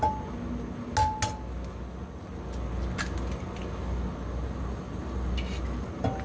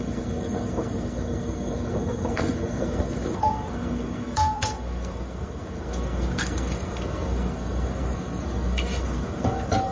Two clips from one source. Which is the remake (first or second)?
second